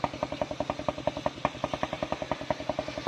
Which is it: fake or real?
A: real